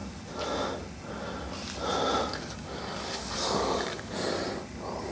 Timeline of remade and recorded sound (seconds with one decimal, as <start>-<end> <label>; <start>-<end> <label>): 0.0-2.3 recorded; 2.3-4.1 remade; 4.1-5.1 recorded